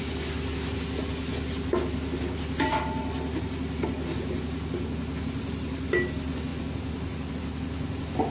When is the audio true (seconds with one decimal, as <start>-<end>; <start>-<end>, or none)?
0.0-8.3